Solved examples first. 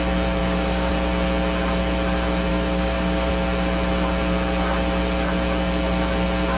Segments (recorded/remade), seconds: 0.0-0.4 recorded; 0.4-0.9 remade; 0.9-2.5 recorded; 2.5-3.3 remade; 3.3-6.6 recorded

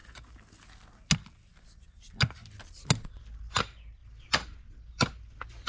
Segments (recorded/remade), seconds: 0.0-5.7 recorded

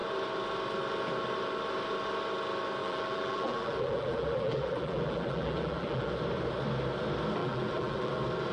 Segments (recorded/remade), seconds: 0.0-2.8 recorded; 2.8-6.1 remade; 6.1-7.4 recorded; 7.4-8.1 remade; 8.1-8.5 recorded

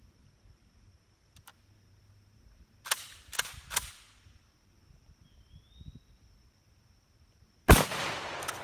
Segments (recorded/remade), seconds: 0.0-8.6 recorded

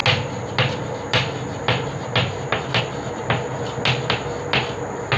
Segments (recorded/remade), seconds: 0.0-5.2 recorded

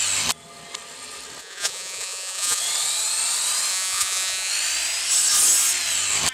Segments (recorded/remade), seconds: 0.0-1.4 recorded; 1.4-2.6 remade; 2.6-3.7 recorded; 3.7-4.5 remade; 4.5-6.3 recorded

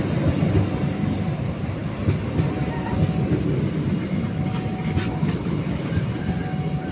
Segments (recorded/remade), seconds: 0.0-6.9 recorded